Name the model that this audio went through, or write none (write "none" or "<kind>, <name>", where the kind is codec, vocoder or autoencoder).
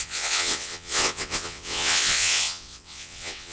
vocoder, WaveNeXt